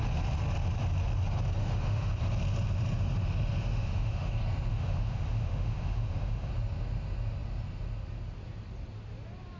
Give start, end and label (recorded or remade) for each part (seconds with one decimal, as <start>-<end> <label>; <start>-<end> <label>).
0.0-1.6 recorded; 1.6-2.1 remade; 2.1-3.7 recorded; 3.7-4.3 remade; 4.3-4.7 recorded; 4.7-6.5 remade; 6.5-9.6 recorded

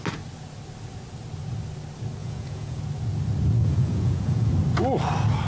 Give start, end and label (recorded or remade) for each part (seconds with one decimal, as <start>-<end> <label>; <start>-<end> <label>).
0.0-2.2 recorded; 2.2-2.8 remade; 2.8-3.6 recorded; 3.6-4.5 remade; 4.5-5.5 recorded

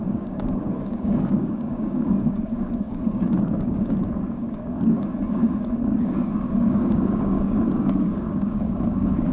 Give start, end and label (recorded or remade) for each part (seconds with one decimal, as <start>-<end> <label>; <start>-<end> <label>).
0.0-9.3 remade

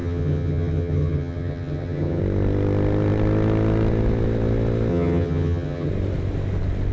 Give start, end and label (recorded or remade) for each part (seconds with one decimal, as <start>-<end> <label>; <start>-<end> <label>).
0.0-2.2 remade; 2.2-4.9 recorded; 4.9-5.9 remade; 5.9-6.9 recorded